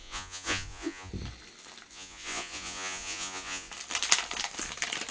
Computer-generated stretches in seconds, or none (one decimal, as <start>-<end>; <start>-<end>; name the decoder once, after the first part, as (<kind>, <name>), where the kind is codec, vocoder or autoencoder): 0.0-1.1 (vocoder, Vocos); 1.9-3.7